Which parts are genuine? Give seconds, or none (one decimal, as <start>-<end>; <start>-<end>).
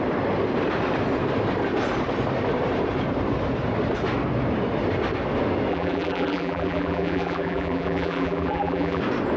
0.0-5.7; 9.0-9.4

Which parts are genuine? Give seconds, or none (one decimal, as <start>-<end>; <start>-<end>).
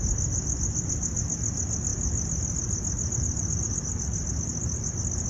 0.0-5.3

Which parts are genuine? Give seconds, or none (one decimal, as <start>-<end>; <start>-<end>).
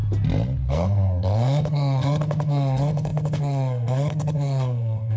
0.0-0.7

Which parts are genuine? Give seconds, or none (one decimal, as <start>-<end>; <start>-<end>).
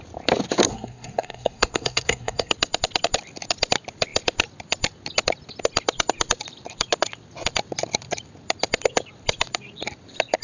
0.0-0.7; 2.5-10.4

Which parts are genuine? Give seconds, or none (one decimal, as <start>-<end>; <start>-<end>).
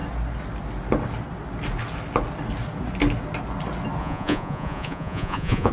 0.0-4.0